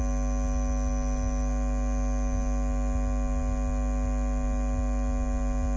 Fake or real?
real